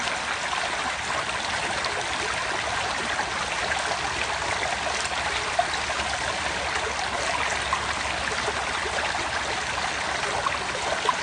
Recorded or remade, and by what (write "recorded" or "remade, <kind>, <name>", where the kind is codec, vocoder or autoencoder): recorded